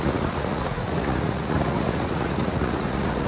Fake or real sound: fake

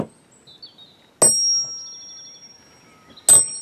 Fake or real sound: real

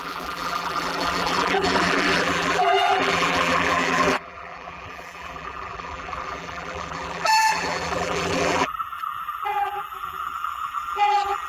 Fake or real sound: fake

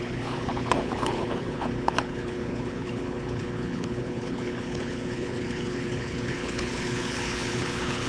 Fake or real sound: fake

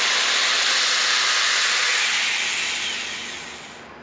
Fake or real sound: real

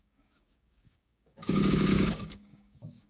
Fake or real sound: fake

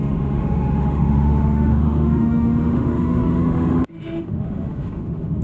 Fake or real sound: fake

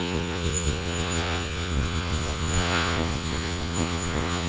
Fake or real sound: fake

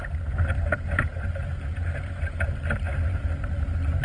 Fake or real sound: real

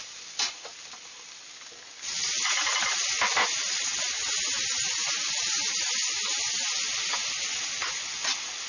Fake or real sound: real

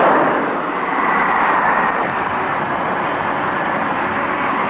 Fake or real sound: real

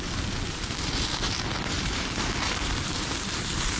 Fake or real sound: fake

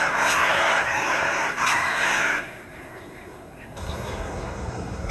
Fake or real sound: fake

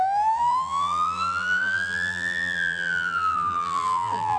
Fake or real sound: fake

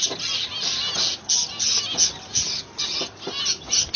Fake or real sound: real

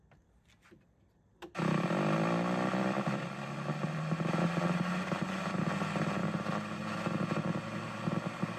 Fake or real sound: real